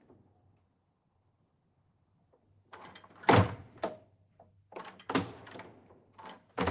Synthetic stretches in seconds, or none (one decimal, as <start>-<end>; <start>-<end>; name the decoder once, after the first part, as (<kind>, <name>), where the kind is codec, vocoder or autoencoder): none